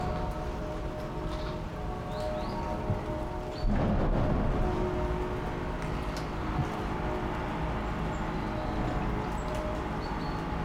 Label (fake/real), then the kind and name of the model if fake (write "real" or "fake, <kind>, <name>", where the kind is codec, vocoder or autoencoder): real